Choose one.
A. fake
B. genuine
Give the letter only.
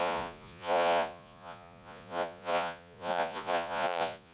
A